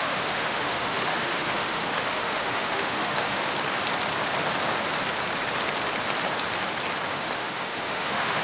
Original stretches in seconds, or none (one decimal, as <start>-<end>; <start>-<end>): 3.4-7.1